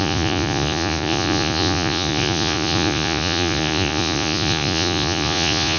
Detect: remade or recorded remade